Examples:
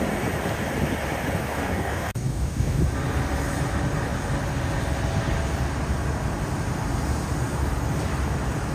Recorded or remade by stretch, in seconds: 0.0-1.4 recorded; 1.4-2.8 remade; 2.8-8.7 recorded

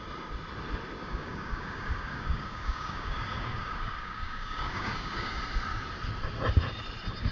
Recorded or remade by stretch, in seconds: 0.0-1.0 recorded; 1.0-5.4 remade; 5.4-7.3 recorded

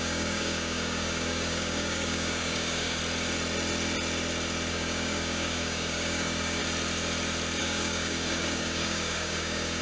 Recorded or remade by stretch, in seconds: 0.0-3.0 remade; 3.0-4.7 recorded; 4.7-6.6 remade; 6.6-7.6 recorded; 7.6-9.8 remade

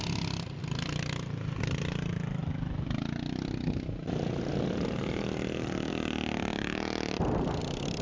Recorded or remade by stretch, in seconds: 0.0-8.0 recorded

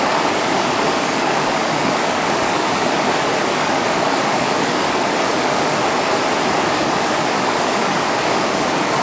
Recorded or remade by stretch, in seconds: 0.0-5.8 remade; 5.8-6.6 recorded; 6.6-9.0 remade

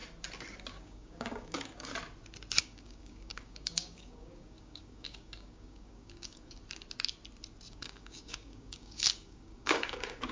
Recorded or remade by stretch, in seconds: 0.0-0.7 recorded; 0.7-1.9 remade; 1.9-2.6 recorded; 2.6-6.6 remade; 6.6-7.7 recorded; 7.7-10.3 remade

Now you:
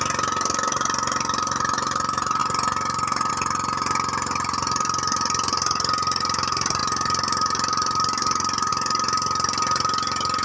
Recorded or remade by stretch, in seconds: 0.0-10.4 recorded

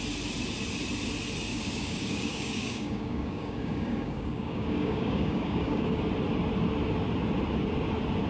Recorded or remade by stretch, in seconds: 0.0-1.5 recorded; 1.5-6.0 remade; 6.0-8.3 recorded